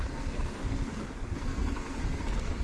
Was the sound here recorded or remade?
remade